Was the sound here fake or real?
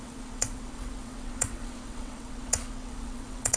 fake